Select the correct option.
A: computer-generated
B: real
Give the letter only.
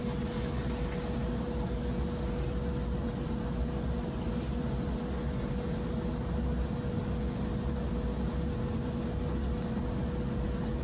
B